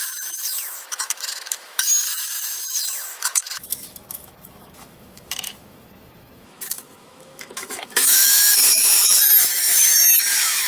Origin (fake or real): fake